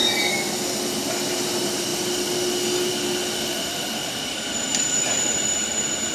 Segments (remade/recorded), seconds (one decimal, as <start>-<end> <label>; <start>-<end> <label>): 0.0-4.0 recorded; 4.0-6.1 remade